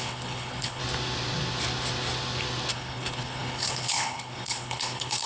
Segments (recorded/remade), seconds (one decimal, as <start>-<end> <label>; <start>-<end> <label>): 0.0-0.8 remade; 0.8-2.7 recorded; 2.7-5.3 remade